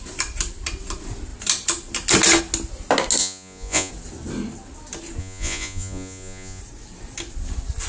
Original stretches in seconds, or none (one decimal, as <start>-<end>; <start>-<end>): 0.0-3.2; 3.9-5.2; 6.6-7.9